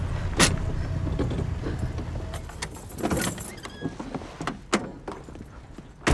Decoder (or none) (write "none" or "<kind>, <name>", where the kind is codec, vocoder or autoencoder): none